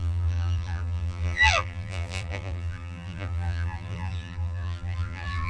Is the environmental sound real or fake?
fake